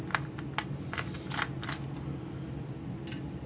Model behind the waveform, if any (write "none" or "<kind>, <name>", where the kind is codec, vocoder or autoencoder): none